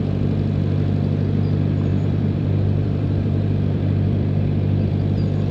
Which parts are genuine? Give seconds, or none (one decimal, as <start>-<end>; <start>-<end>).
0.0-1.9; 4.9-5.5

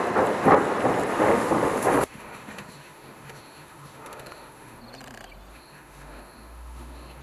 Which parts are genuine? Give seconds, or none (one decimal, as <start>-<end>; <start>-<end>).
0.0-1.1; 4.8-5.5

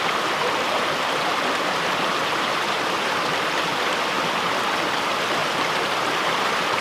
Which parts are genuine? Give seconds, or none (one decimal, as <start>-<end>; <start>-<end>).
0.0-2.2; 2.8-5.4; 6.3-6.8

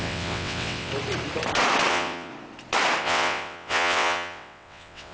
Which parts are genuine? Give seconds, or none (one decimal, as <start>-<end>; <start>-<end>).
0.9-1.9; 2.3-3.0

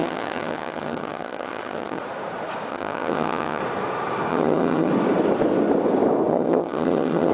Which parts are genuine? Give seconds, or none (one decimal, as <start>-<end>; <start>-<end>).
2.0-2.7; 3.6-4.3; 4.9-6.3

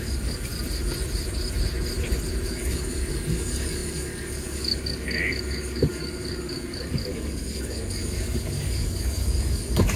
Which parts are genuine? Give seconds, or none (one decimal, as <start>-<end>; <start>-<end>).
0.5-2.5

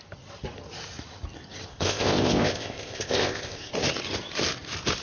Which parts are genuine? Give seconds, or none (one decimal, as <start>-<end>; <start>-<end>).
0.0-1.7; 3.7-5.0